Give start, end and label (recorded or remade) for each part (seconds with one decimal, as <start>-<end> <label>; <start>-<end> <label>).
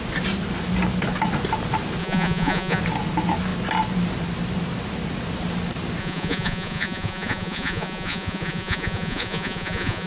0.0-2.0 recorded; 2.0-2.8 remade; 2.8-6.0 recorded; 6.0-10.1 remade